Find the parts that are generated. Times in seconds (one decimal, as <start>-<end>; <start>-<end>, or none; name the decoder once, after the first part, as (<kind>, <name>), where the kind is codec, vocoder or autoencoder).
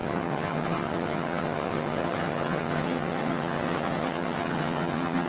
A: 0.0-5.3 (vocoder, HiFi-GAN)